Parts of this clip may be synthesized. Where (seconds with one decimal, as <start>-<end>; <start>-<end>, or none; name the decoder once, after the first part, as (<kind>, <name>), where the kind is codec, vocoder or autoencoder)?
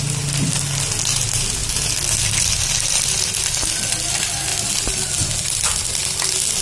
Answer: none